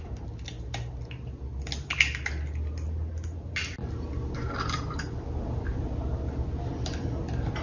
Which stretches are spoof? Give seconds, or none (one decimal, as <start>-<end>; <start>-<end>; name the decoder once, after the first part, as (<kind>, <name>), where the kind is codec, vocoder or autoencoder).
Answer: none

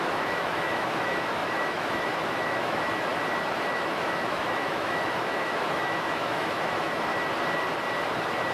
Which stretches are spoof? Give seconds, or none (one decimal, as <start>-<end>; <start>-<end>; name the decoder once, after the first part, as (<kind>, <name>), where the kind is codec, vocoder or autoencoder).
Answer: 0.0-3.1 (autoencoder, DAC-VAE); 3.7-7.1

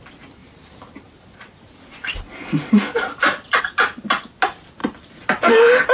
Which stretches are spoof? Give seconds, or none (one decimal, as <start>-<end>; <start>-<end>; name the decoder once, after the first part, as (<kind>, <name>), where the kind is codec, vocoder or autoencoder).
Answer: none

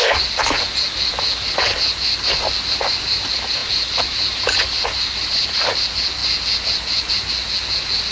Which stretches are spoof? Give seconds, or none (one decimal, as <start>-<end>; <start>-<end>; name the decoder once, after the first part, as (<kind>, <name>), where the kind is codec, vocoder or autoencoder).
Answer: none

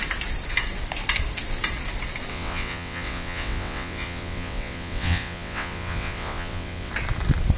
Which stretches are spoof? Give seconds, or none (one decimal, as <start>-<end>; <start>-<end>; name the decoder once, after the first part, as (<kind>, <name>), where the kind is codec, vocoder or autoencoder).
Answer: 2.3-6.9 (vocoder, WaveNeXt)

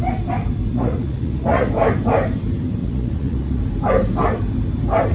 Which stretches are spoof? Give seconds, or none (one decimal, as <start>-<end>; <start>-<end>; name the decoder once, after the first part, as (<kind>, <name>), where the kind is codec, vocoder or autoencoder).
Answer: 0.7-1.7 (vocoder, Vocos); 2.8-3.6